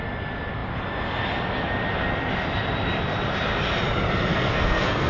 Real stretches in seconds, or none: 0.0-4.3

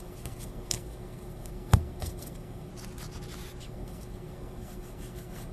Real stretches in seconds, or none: 2.7-3.6

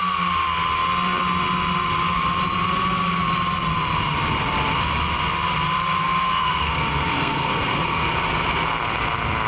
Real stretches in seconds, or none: 0.0-6.0; 8.1-9.5

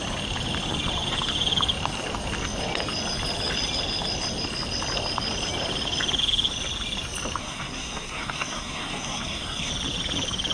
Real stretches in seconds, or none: 0.0-7.4; 9.7-10.5

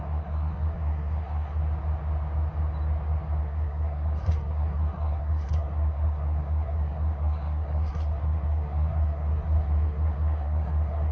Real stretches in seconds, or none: 1.6-3.4

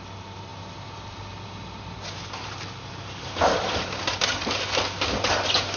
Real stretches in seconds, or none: 0.0-5.8

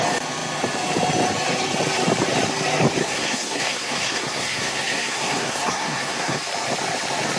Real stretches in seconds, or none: 0.0-3.0; 6.4-7.4